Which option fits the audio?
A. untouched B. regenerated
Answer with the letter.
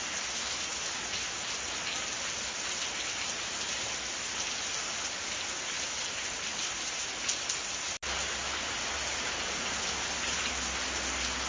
A